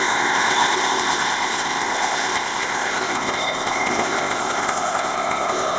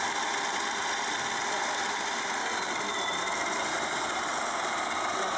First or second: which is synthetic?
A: first